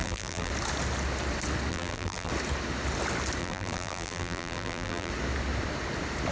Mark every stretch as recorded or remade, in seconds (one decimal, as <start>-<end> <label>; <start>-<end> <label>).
0.0-0.5 remade; 0.5-1.7 recorded; 1.7-2.3 remade; 2.3-3.4 recorded; 3.4-5.1 remade; 5.1-6.3 recorded